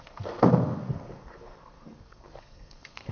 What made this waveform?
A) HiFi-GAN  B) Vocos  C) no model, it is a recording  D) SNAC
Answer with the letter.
D